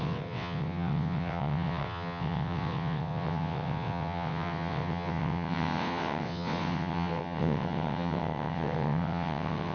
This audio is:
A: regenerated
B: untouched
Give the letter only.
A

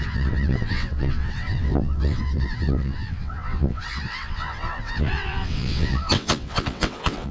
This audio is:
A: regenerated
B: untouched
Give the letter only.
A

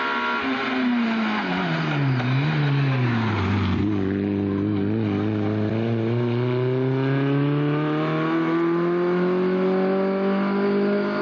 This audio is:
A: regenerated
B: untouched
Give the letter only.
B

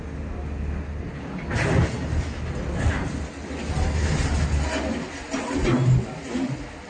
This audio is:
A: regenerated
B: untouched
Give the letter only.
B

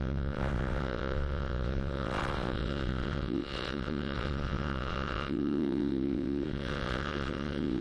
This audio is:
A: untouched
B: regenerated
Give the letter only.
B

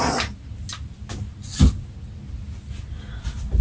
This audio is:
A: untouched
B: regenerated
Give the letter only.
A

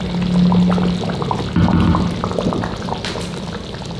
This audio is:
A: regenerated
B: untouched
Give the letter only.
B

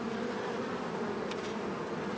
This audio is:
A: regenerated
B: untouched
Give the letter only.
B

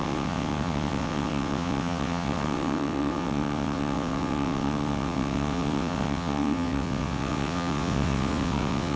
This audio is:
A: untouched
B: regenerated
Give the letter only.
B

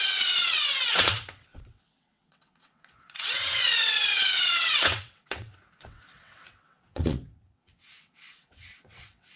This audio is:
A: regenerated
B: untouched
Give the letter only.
A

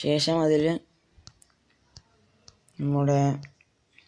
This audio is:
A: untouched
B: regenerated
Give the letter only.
A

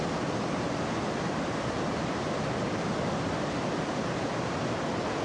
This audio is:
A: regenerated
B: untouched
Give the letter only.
B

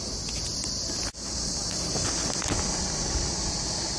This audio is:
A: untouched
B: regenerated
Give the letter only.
A